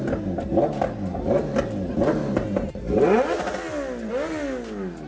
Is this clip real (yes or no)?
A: yes